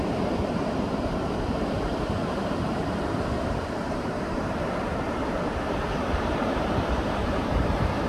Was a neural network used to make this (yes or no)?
yes